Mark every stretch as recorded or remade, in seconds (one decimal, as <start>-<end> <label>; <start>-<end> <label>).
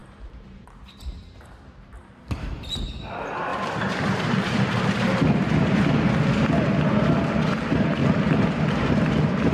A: 0.0-2.6 remade; 2.6-3.5 recorded; 3.5-6.3 remade; 6.3-8.0 recorded; 8.0-8.9 remade; 8.9-9.5 recorded